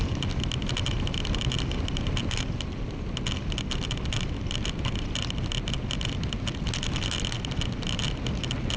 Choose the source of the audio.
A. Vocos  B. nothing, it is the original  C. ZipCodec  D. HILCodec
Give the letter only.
B